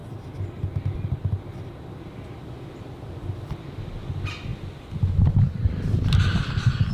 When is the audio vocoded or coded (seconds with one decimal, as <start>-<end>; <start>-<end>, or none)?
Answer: none